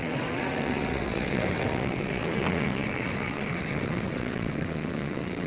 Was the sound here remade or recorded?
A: remade